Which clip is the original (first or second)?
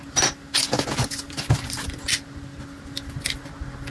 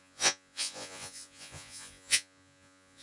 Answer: first